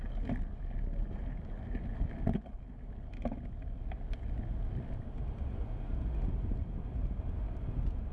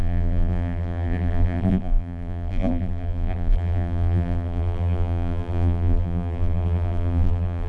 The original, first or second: first